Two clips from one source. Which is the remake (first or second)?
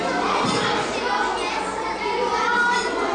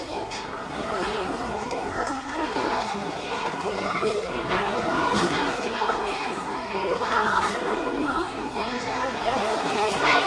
second